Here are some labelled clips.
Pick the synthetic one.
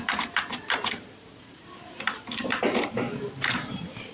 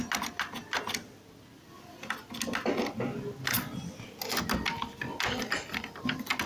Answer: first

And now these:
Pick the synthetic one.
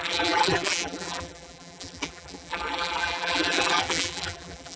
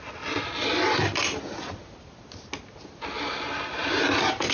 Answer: first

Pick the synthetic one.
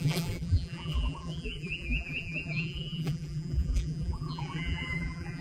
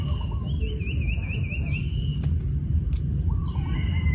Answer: first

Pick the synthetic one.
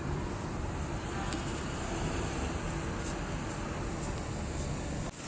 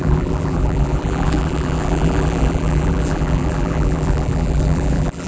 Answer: second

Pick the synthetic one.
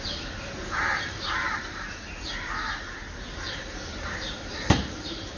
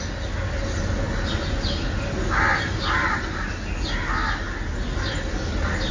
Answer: first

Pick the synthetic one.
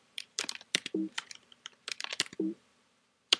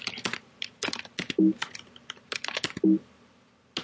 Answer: first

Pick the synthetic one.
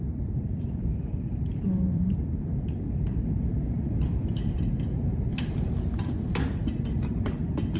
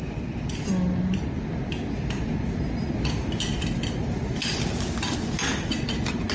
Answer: first